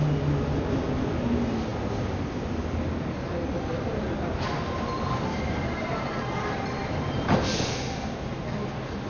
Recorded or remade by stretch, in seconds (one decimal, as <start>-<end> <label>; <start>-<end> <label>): 0.0-9.1 recorded